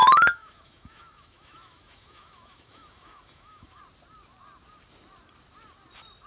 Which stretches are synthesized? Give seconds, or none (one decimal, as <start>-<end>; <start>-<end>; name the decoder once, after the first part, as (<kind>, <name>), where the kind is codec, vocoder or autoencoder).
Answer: 0.0-3.8 (autoencoder, DAC-VAE)